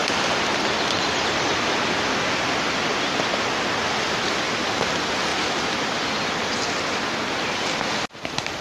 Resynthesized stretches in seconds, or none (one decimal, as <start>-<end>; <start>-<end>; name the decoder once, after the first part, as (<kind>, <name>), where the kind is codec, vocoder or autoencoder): 0.0-2.1 (vocoder, BigVGAN v2)